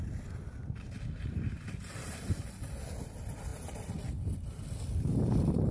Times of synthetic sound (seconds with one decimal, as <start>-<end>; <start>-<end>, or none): 0.0-5.7